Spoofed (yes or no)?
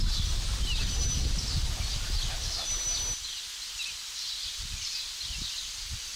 no